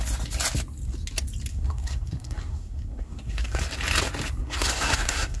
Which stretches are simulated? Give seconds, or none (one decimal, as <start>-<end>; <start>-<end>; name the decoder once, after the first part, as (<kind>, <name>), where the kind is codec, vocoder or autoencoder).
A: 1.5-3.6 (codec, SNAC); 4.4-5.4